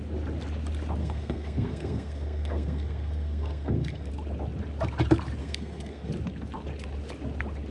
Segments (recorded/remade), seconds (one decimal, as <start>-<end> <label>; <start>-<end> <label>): 0.0-1.0 recorded; 1.0-4.1 remade; 4.1-5.4 recorded; 5.4-6.1 remade; 6.1-7.7 recorded